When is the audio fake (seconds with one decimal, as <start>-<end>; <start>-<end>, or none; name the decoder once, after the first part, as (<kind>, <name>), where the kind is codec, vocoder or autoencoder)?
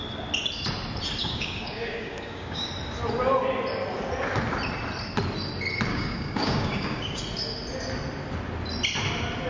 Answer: 1.2-2.7 (codec, DAC); 5.9-7.2